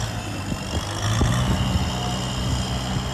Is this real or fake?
real